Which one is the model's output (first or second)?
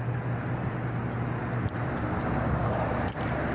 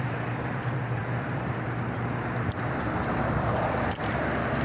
second